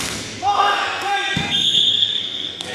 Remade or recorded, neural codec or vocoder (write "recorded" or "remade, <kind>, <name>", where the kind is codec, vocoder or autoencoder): remade, codec, SNAC